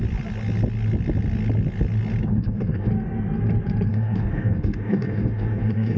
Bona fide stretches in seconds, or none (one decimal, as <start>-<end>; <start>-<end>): 0.0-2.3; 2.9-3.9